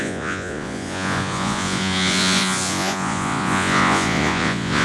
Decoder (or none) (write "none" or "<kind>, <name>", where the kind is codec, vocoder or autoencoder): vocoder, Vocos